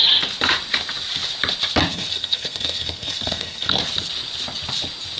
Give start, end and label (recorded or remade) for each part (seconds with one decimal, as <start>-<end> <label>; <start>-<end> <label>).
0.0-1.9 recorded; 1.9-3.8 remade; 3.8-5.2 recorded